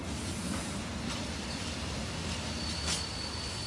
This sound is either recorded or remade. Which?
recorded